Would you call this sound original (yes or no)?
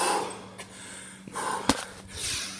yes